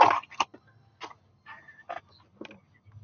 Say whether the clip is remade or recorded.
recorded